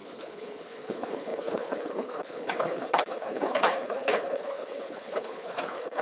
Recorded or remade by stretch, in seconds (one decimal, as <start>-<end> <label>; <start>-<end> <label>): 0.0-6.0 remade